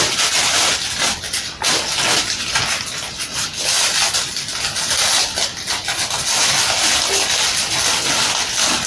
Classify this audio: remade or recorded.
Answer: recorded